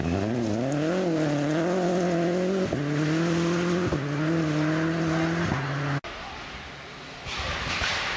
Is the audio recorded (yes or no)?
yes